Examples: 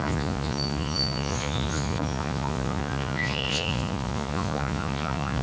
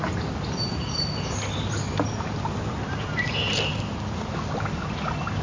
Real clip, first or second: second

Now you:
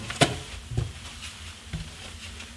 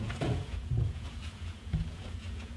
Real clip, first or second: first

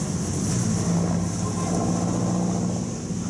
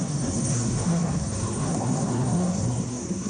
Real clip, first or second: first